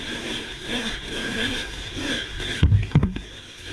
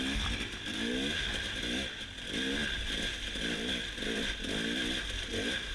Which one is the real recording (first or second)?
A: second